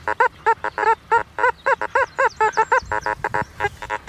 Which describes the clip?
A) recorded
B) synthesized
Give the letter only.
A